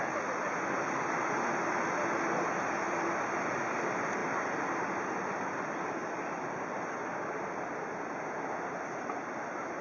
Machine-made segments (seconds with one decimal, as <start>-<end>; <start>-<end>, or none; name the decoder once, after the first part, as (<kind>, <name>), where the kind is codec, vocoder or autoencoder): none